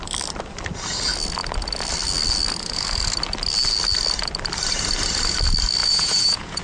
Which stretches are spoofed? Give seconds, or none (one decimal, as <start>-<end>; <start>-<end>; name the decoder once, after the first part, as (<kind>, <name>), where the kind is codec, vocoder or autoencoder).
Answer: 5.8-6.6 (vocoder, Vocos)